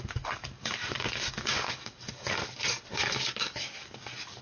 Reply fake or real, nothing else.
fake